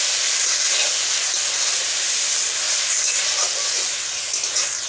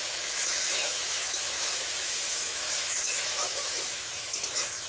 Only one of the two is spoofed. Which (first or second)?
second